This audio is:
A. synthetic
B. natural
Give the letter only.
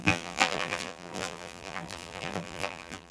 A